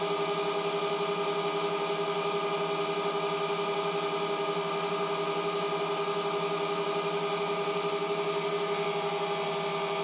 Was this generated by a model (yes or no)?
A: no